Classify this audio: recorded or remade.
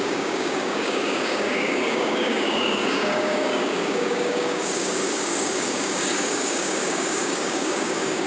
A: remade